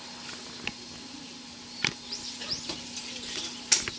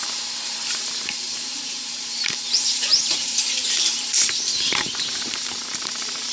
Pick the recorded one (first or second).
first